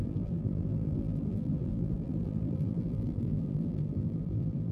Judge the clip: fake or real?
fake